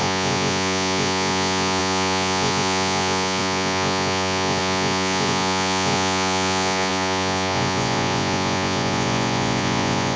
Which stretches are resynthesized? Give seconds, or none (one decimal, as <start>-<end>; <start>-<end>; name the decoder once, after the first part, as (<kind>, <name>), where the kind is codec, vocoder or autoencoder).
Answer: 0.0-10.2 (vocoder, Vocos)

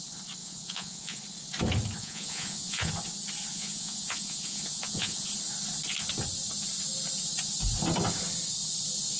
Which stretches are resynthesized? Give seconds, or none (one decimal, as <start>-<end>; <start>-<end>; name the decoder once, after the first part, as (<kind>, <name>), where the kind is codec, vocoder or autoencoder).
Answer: 0.4-1.2 (vocoder, Vocos); 2.0-2.9; 3.5-5.3

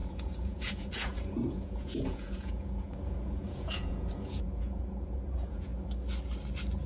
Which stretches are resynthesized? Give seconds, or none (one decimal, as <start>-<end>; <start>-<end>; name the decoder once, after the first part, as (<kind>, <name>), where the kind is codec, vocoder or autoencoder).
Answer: 0.0-5.7 (vocoder, Vocos)